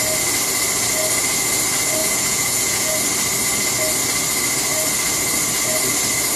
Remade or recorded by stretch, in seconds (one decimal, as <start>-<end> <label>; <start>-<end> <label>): 0.0-2.0 recorded; 2.0-3.0 remade; 3.0-6.4 recorded